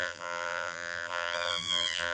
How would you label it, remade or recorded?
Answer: remade